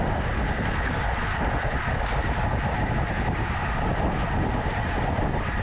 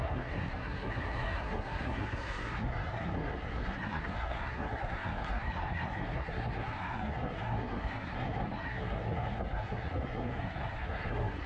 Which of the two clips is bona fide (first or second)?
first